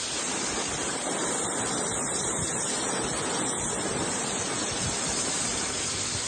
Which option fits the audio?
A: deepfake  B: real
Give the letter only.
A